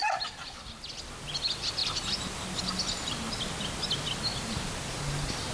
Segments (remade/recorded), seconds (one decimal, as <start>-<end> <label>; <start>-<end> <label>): 0.0-0.7 remade; 0.7-5.5 recorded